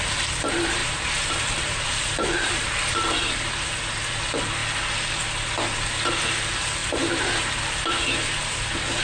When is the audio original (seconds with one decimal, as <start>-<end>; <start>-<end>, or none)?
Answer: 0.0-0.8; 3.2-6.8; 7.7-9.0